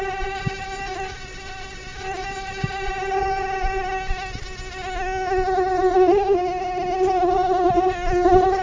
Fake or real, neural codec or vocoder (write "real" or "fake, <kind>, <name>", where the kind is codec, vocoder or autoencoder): real